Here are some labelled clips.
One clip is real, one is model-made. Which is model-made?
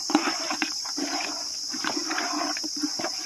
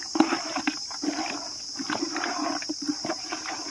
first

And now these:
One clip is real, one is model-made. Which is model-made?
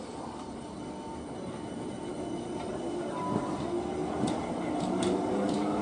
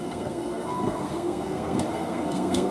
second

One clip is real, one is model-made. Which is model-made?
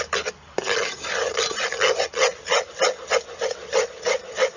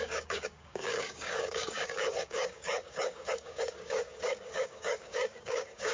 second